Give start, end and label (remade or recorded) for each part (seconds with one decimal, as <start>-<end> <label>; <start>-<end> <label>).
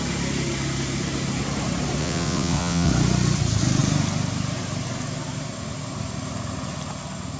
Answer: 0.0-2.0 recorded; 2.0-2.9 remade; 2.9-7.4 recorded